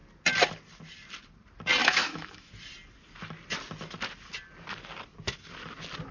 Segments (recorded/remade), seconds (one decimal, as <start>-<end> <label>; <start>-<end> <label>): 0.0-1.8 recorded; 1.8-2.5 remade; 2.5-6.1 recorded